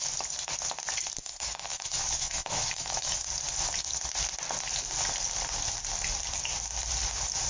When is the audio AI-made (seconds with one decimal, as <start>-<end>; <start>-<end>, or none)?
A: 1.2-3.3